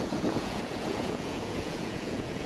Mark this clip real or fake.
fake